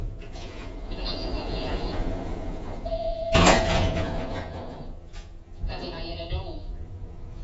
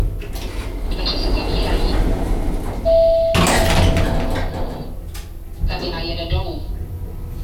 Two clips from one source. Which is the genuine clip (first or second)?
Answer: second